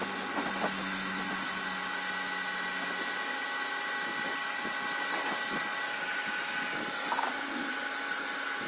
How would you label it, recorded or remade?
recorded